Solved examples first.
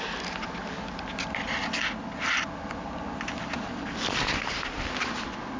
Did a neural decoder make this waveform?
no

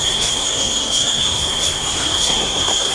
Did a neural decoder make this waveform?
yes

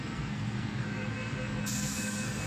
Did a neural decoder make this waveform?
yes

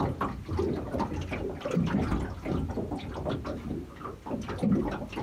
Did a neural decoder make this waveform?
no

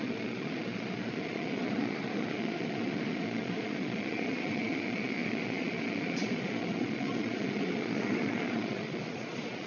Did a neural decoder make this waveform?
yes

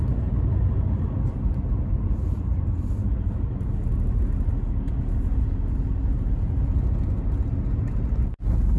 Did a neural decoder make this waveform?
no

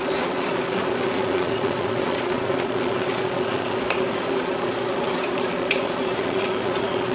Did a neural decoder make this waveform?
yes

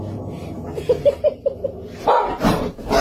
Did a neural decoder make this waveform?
no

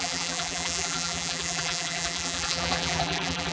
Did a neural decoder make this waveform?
yes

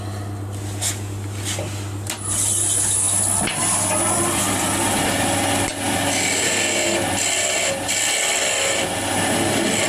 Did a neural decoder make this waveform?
no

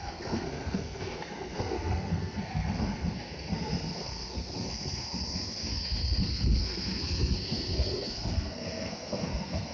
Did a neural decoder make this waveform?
yes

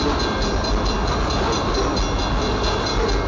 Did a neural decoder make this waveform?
no